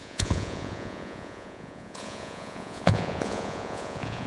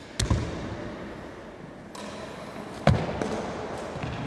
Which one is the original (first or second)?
second